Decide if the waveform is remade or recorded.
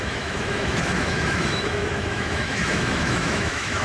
remade